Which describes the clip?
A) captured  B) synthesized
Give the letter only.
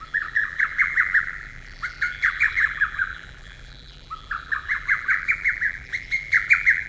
B